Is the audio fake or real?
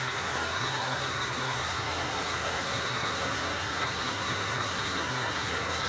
fake